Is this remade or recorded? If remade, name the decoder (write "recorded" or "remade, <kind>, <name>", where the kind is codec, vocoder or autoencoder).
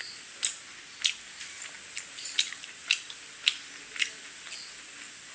recorded